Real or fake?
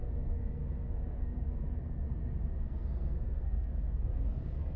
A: fake